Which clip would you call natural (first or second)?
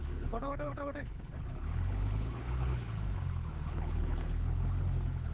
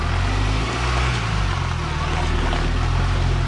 second